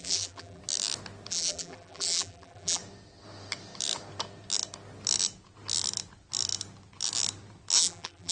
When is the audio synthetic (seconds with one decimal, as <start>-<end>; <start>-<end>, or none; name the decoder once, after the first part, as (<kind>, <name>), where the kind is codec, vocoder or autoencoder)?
0.0-0.6 (vocoder, BigVGAN v2); 1.3-2.8; 7.8-8.3